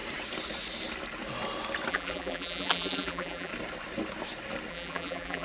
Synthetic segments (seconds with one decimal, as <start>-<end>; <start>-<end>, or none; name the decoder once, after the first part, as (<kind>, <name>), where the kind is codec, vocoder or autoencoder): 1.9-3.5 (vocoder, BigVGAN v2); 4.7-5.4